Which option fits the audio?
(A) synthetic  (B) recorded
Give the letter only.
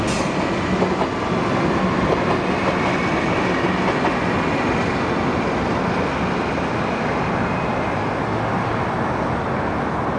B